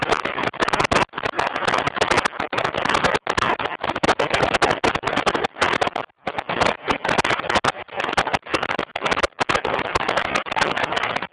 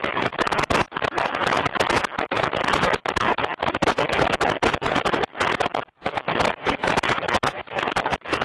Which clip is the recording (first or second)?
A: first